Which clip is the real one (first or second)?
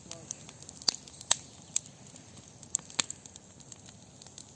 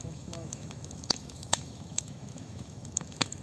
first